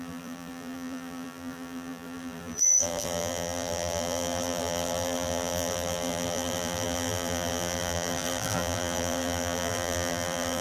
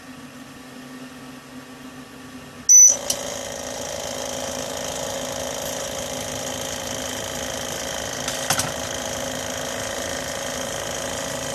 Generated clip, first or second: first